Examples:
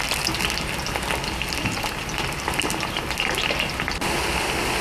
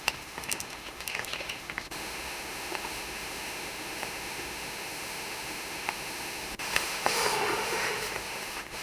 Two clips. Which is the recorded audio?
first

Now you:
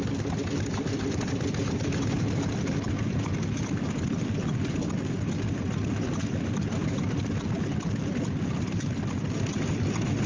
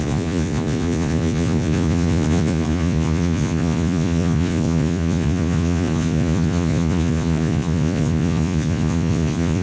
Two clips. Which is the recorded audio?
first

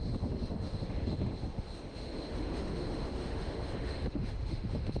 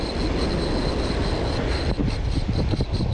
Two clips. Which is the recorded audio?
second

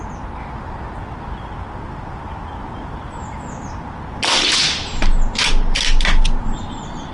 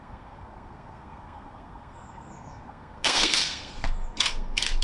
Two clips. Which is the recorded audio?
first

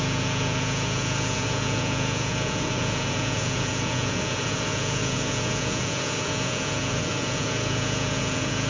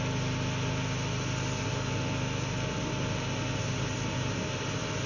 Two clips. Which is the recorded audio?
second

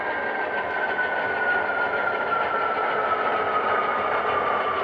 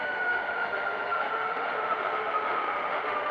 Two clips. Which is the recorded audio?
first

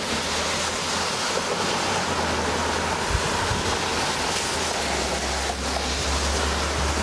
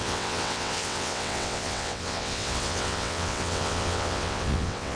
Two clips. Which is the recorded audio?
first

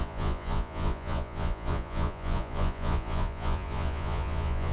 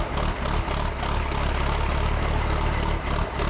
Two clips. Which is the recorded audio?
second